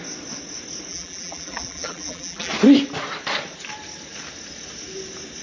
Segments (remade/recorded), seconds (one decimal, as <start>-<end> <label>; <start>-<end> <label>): 0.0-0.9 recorded; 0.9-2.5 remade; 2.5-5.4 recorded